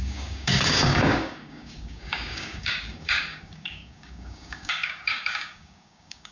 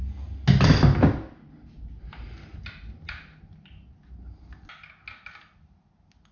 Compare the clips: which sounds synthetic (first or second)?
first